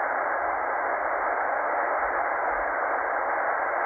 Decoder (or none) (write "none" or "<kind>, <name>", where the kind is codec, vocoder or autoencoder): none